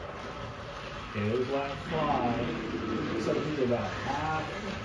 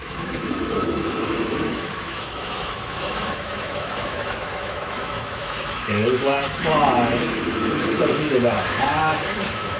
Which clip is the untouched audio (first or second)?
first